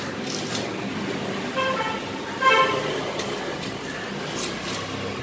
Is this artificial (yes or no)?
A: no